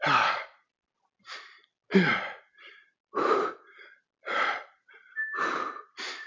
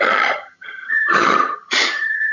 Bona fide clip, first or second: first